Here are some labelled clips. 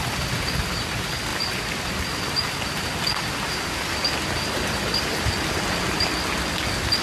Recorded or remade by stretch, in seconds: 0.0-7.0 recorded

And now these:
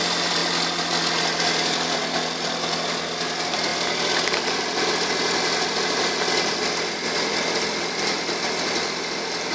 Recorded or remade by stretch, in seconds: 0.0-9.5 recorded